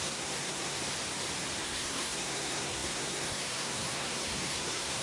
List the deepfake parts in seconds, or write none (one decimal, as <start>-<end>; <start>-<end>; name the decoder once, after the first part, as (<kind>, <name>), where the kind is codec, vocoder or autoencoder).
0.0-0.8 (codec, SNAC); 1.6-5.0